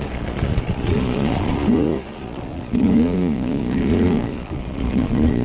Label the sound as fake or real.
fake